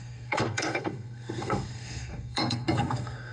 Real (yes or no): no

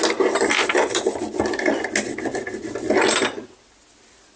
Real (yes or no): yes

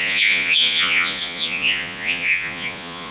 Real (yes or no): no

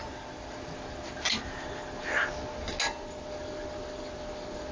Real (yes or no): yes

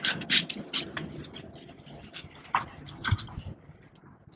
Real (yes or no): yes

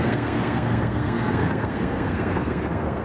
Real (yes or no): no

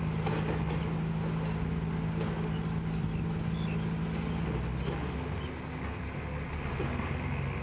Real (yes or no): yes